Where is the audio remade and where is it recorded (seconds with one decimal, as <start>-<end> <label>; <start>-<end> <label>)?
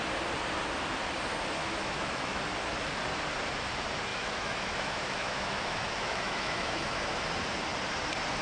0.0-1.6 recorded; 1.6-2.4 remade; 2.4-4.1 recorded; 4.1-7.2 remade; 7.2-8.4 recorded